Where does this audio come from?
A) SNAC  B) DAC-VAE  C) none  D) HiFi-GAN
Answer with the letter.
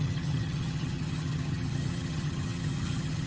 D